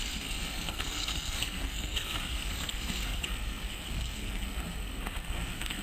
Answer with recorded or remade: remade